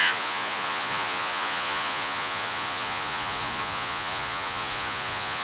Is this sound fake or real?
fake